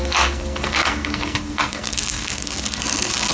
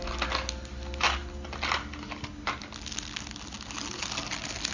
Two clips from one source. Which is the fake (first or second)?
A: first